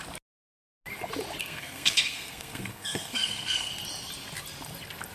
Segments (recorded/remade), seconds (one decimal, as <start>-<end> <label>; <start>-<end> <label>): 0.0-1.4 recorded; 1.4-3.7 remade; 3.7-5.1 recorded